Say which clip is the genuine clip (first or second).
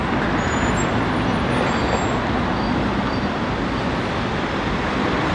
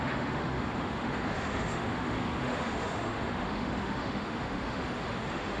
first